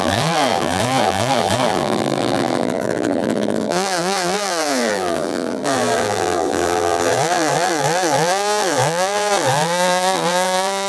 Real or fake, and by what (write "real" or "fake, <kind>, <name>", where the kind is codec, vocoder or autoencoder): fake, vocoder, BigVGAN v2